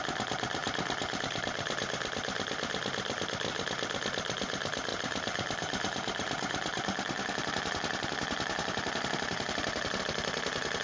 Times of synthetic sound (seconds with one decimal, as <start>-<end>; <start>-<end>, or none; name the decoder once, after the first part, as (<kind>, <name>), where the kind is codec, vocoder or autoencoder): 0.6-1.2 (vocoder, BigVGAN v2); 4.9-10.0